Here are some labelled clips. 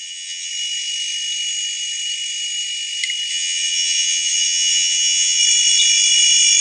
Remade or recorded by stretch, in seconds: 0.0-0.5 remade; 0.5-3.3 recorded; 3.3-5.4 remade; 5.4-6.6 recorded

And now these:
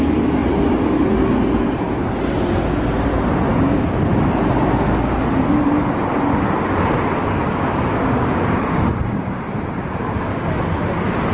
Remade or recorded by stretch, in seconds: 0.0-3.5 recorded; 3.5-4.1 remade; 4.1-7.2 recorded; 7.2-9.4 remade; 9.4-11.3 recorded

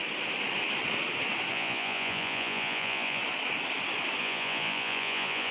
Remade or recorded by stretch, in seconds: 0.0-1.5 recorded; 1.5-3.2 remade; 3.2-4.2 recorded; 4.2-5.5 remade

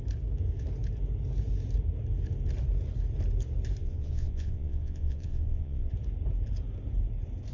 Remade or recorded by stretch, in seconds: 0.0-3.8 recorded; 3.8-5.9 remade; 5.9-7.5 recorded

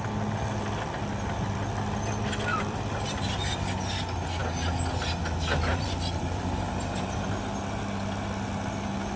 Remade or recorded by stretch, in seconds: 0.0-2.5 recorded; 2.5-3.2 remade; 3.2-5.7 recorded; 5.7-6.7 remade; 6.7-9.2 recorded